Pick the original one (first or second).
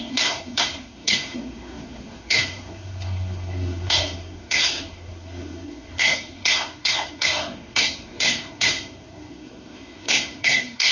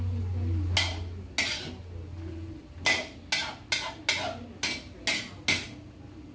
second